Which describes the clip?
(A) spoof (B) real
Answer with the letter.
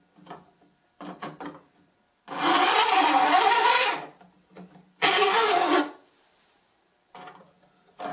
B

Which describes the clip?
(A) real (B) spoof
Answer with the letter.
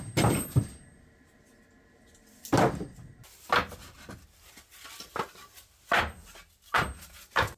A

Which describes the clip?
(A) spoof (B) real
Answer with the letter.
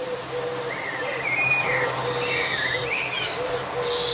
B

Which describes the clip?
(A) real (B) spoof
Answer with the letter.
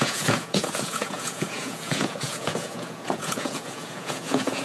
B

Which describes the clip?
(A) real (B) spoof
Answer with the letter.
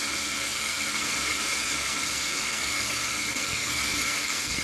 B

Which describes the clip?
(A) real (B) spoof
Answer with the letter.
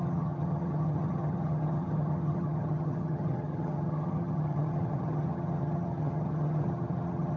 B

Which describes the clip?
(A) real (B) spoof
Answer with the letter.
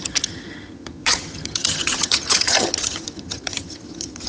B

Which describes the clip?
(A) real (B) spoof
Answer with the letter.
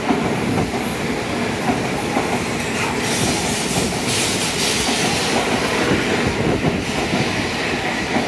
A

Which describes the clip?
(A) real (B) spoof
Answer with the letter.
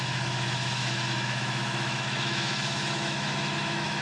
B